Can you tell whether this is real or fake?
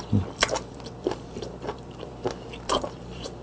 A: fake